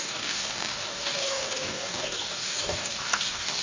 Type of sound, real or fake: fake